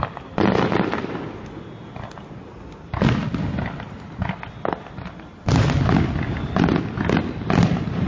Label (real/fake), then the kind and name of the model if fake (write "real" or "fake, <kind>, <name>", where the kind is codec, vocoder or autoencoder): real